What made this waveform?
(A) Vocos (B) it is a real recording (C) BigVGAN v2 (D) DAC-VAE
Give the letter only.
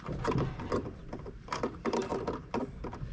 C